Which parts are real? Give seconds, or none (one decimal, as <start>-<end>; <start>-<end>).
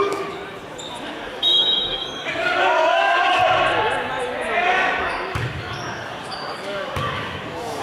0.4-1.1; 3.4-5.0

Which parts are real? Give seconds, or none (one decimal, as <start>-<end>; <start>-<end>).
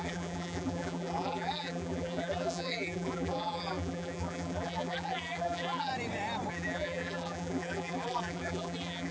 5.9-6.5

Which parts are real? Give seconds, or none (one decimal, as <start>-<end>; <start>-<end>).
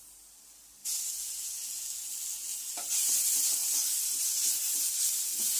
0.0-5.6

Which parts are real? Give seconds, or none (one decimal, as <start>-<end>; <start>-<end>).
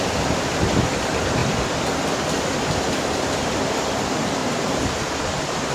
0.0-4.4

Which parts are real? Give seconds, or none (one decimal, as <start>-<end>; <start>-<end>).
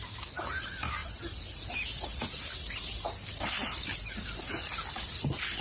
0.0-5.6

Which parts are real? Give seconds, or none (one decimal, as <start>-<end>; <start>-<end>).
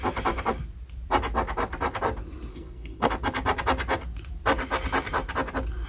0.0-2.5; 3.1-5.9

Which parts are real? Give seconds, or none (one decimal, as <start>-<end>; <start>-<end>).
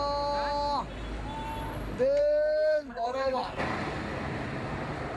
0.0-2.2; 3.6-5.2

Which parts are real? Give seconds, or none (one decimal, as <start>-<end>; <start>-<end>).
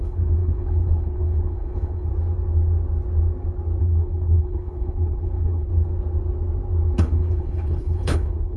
2.1-3.8; 5.7-7.0